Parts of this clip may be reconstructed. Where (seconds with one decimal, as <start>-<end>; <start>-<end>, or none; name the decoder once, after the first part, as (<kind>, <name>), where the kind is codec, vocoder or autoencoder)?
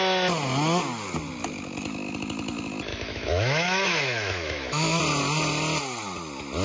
2.9-5.0 (autoencoder, DAC-VAE)